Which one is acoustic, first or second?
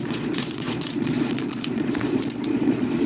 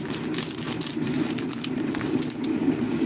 second